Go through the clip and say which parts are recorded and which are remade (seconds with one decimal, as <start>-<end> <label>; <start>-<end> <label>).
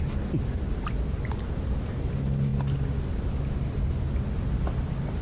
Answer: 0.0-5.2 recorded